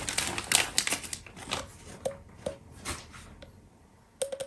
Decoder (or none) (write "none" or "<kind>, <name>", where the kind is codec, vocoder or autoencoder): none